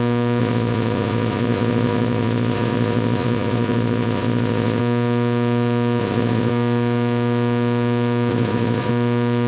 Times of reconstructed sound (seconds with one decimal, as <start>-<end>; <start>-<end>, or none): 0.4-4.8; 6.0-6.5; 8.3-8.9